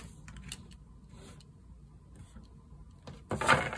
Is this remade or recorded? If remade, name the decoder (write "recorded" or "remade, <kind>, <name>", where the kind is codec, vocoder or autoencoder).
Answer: recorded